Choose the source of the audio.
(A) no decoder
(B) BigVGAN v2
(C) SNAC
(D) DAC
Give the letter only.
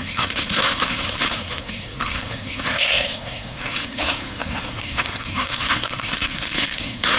C